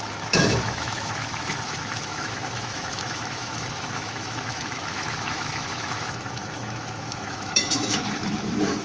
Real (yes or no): no